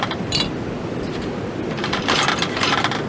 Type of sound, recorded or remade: remade